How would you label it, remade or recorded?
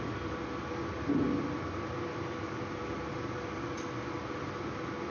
recorded